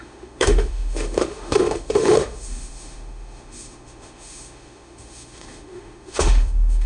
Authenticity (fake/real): fake